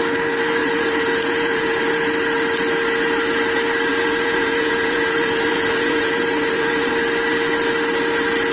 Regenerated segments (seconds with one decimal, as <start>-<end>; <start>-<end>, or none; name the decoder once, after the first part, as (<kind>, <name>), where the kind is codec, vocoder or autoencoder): 0.6-1.8 (vocoder, Vocos); 3.9-6.9